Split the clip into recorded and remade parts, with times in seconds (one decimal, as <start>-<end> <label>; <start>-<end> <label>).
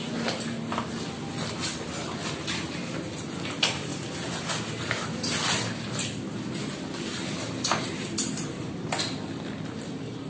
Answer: 0.0-10.3 recorded